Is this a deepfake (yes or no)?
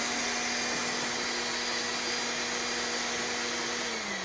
no